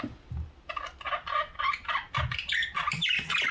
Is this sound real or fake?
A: real